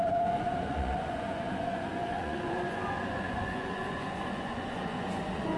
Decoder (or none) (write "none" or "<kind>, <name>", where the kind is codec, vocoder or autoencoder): vocoder, Vocos